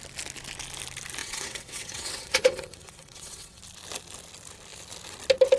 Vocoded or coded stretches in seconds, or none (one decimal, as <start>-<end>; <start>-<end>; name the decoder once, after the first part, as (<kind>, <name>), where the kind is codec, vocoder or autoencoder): 1.2-3.6 (vocoder, WaveNeXt)